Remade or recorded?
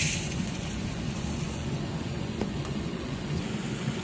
remade